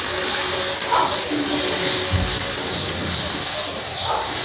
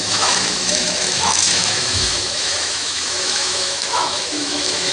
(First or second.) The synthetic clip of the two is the second